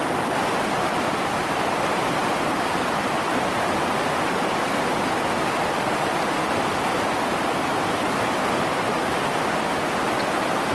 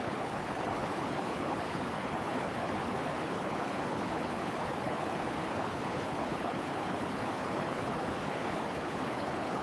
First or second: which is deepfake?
second